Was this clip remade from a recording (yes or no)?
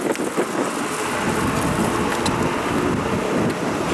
no